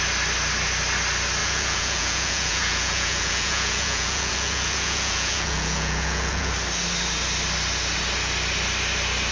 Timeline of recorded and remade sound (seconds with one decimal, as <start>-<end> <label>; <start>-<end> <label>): 0.0-1.4 recorded; 1.4-6.5 remade; 6.5-9.3 recorded